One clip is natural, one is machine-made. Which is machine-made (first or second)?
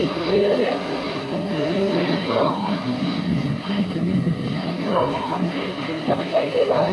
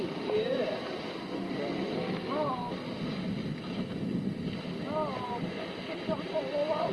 first